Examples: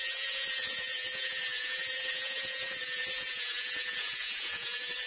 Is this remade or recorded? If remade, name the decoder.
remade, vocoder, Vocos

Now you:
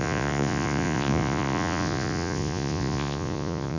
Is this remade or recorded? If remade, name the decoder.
remade, vocoder, Vocos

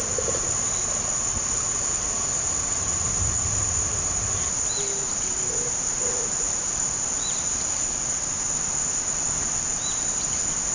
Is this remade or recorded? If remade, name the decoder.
recorded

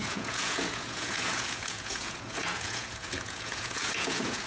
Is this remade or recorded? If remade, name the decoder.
remade, vocoder, Vocos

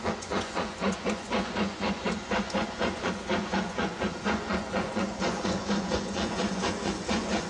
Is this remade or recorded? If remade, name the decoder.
remade, vocoder, Vocos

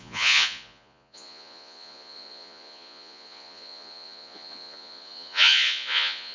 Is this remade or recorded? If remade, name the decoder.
remade, vocoder, Vocos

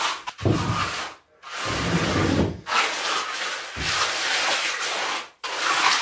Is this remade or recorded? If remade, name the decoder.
recorded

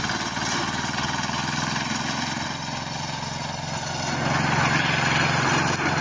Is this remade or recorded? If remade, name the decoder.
recorded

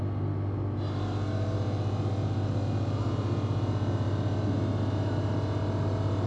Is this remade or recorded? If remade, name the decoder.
recorded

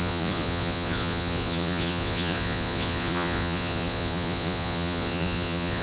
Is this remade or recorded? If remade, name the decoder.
remade, vocoder, Vocos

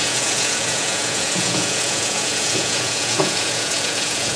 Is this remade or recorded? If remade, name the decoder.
remade, vocoder, Vocos